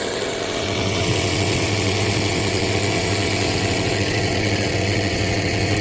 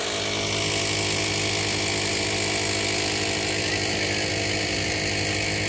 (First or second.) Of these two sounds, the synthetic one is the first